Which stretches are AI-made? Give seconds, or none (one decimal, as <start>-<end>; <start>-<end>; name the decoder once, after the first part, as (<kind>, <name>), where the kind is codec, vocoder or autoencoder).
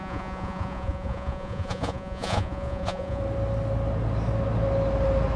0.0-3.2 (vocoder, Vocos)